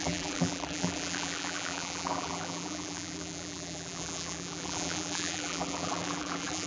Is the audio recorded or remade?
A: remade